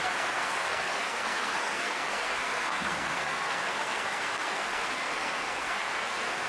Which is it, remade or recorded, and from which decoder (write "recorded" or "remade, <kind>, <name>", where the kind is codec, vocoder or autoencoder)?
remade, codec, SNAC